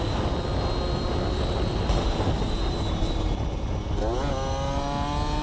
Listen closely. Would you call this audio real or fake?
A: real